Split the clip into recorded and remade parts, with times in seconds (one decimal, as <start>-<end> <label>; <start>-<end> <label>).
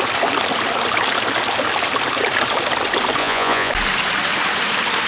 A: 0.0-3.2 recorded; 3.2-3.7 remade; 3.7-5.1 recorded